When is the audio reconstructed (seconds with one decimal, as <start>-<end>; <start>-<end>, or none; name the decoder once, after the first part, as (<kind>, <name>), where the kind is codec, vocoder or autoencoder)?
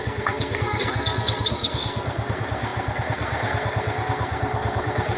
0.0-5.2 (codec, SNAC)